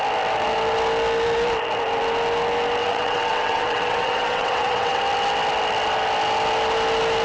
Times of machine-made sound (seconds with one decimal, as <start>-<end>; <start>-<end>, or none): 2.8-5.0